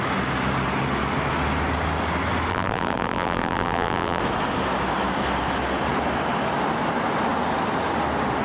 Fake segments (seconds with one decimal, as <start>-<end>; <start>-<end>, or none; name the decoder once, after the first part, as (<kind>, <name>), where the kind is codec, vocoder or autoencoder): 2.5-4.2 (vocoder, BigVGAN v2)